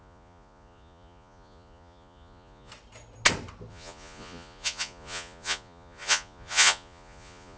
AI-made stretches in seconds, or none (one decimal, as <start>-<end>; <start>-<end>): 0.0-2.7; 3.7-7.6